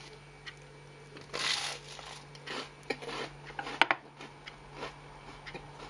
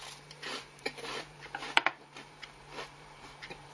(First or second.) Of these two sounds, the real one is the first